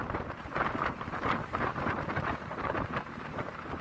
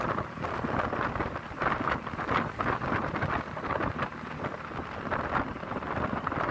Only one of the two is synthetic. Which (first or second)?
first